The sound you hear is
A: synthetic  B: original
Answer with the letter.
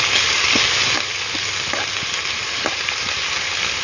B